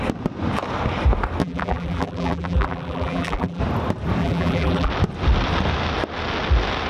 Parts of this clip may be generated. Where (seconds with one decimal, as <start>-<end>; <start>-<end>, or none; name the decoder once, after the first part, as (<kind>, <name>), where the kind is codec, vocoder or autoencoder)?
1.4-3.6 (vocoder, BigVGAN v2); 4.2-4.9